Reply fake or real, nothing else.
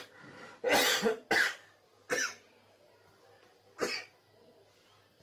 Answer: real